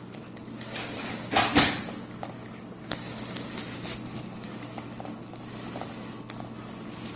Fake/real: real